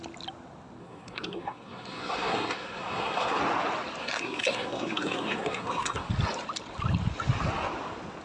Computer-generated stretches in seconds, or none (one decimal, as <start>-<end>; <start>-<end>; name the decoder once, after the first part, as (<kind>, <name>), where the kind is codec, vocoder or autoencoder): 0.8-3.4 (codec, SNAC); 4.0-6.1